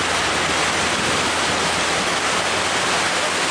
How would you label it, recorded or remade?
recorded